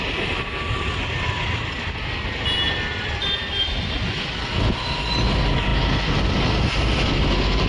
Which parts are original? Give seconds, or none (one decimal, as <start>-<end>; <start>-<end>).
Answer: 0.0-7.7